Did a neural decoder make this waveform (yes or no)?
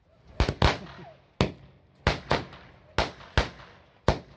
no